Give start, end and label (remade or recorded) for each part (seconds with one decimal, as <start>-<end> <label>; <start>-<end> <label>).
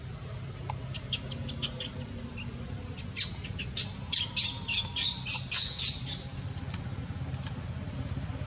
0.0-8.5 recorded